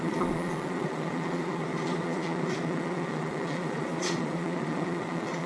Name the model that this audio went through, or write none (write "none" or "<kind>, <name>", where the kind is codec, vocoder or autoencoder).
vocoder, Vocos